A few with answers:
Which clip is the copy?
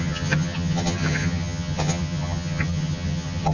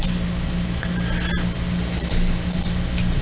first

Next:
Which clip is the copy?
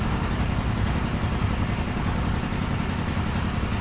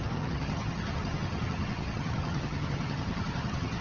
second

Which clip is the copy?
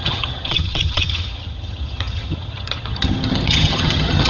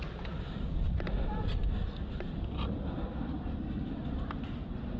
first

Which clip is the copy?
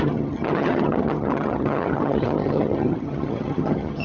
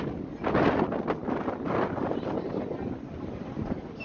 first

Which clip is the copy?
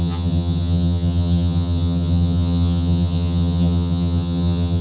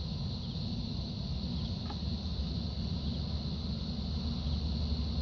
first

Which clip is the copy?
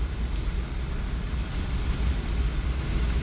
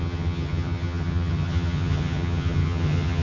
second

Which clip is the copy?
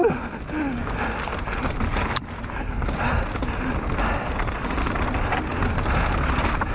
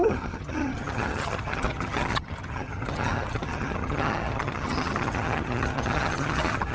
second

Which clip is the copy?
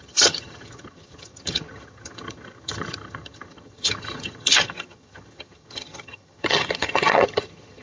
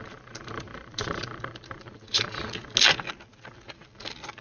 first